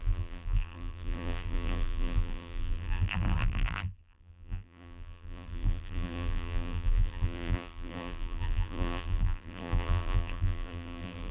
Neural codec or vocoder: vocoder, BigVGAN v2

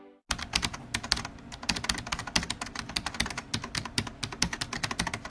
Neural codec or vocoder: none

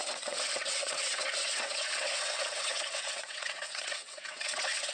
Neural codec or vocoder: vocoder, WaveNeXt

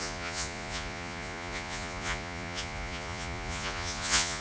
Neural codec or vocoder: vocoder, Vocos